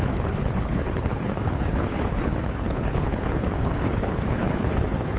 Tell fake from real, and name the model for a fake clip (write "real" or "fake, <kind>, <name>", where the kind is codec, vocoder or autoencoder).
fake, codec, HILCodec